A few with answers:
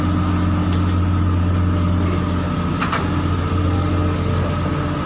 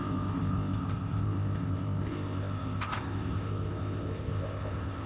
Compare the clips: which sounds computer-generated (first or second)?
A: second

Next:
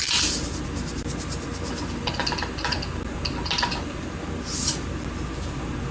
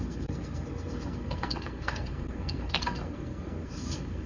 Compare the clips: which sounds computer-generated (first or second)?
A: second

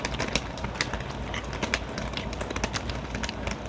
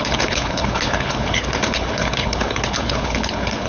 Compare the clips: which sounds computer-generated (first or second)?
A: second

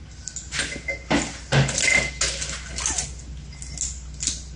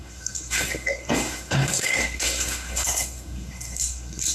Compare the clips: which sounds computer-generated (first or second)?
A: second